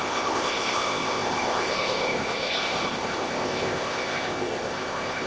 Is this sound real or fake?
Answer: fake